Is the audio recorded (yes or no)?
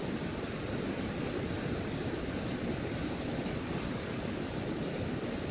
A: yes